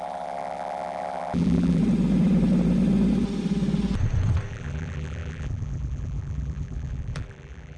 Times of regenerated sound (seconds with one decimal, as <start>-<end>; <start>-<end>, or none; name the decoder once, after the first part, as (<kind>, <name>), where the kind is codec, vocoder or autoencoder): 0.0-1.8 (vocoder, BigVGAN v2); 4.5-7.8